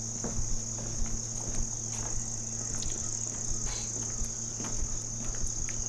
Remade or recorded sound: recorded